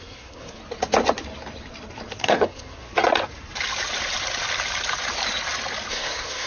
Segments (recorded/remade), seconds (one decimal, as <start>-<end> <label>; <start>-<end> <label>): 0.0-0.6 remade; 0.6-2.2 recorded; 2.2-2.9 remade; 2.9-5.9 recorded; 5.9-6.5 remade